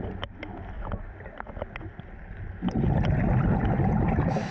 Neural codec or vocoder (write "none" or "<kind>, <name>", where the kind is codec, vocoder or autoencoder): none